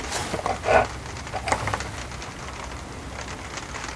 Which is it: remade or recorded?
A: recorded